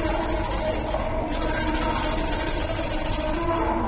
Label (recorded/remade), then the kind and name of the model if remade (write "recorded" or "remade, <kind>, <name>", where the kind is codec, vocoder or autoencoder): recorded